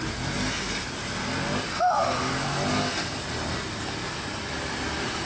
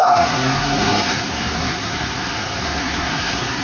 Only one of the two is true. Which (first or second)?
first